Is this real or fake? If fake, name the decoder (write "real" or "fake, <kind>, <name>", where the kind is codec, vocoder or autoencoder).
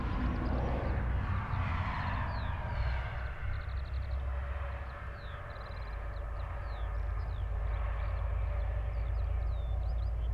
real